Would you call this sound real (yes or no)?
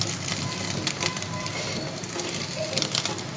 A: yes